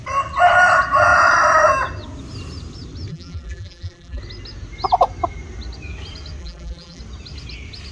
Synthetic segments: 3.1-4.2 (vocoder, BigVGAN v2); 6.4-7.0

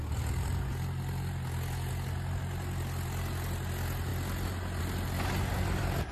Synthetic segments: none

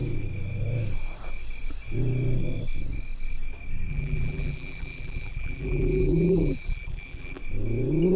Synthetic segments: 3.9-7.4 (vocoder, BigVGAN v2)

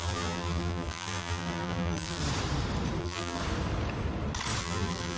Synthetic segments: 0.0-2.2 (vocoder, BigVGAN v2); 3.0-3.4; 4.6-5.2

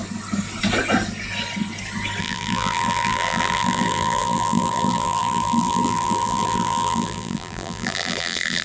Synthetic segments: 2.2-8.6 (vocoder, BigVGAN v2)

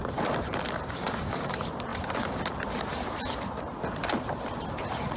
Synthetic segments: 0.0-5.2 (vocoder, BigVGAN v2)

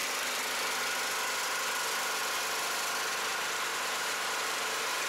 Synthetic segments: 3.7-5.1 (vocoder, BigVGAN v2)